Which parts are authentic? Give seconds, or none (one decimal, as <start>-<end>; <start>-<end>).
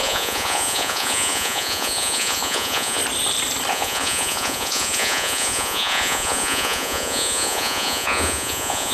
3.0-3.7